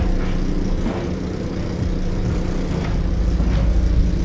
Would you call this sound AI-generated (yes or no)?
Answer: no